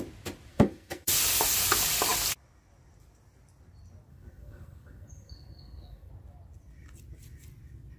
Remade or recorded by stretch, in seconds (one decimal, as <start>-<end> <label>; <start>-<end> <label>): 0.0-0.5 recorded; 0.5-1.1 remade; 1.1-4.1 recorded; 4.1-6.1 remade; 6.1-8.0 recorded